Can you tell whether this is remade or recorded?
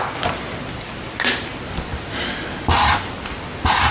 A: recorded